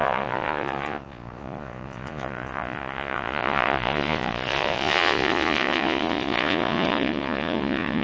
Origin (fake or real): fake